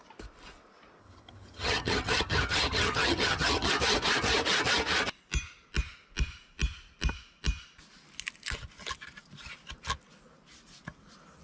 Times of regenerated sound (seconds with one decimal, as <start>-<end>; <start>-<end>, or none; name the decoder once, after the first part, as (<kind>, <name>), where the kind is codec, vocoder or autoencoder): 1.0-3.7 (vocoder, HiFi-GAN)